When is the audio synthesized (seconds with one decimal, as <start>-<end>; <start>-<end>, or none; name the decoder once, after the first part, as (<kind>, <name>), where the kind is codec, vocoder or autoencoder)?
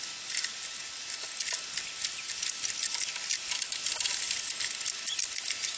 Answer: none